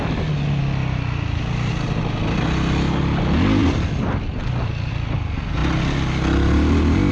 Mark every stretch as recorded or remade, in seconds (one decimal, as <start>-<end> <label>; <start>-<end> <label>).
0.0-0.6 recorded; 0.6-1.7 remade; 1.7-3.6 recorded; 3.6-4.9 remade; 4.9-7.1 recorded